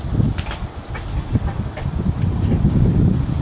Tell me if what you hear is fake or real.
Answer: fake